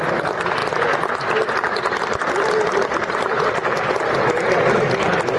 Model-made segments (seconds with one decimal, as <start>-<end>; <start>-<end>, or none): none